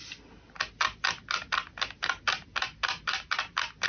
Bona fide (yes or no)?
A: yes